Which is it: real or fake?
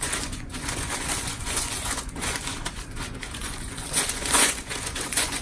fake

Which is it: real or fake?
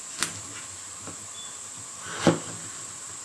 real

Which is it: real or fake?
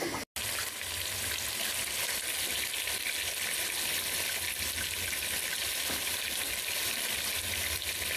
real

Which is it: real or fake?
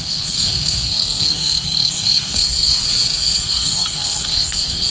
fake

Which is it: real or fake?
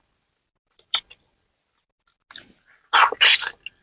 real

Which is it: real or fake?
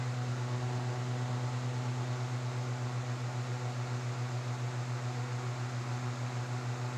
real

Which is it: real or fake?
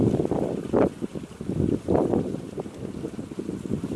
real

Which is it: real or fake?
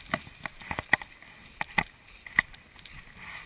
real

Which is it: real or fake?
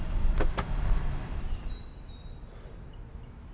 real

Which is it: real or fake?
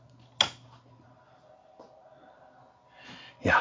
real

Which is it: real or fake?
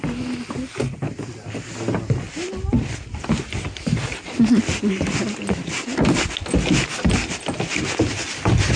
real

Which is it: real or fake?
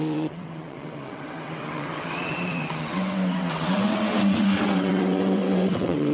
fake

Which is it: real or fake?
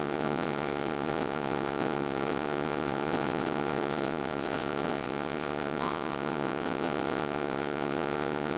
fake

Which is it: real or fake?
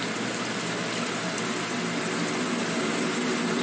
real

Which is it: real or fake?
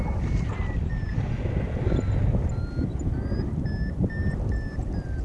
real